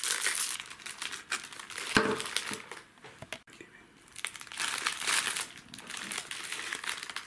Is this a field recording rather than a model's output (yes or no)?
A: yes